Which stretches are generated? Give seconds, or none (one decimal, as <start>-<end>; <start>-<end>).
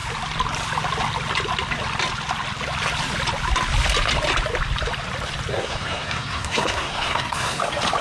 5.5-7.6